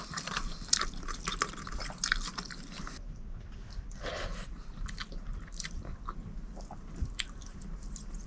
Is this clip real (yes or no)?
no